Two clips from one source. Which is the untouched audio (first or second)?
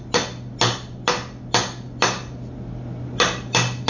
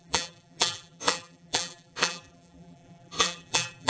first